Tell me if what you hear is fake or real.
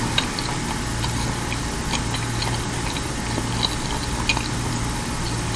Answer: real